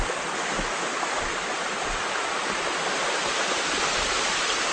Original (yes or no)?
yes